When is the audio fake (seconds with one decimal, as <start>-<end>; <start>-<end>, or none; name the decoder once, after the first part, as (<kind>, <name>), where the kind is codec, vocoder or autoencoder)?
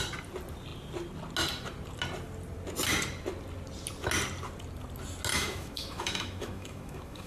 5.3-7.3 (autoencoder, DAC-VAE)